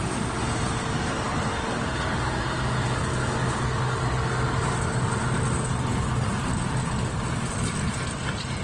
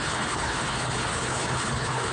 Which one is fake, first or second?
second